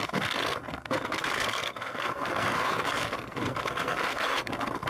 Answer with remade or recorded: remade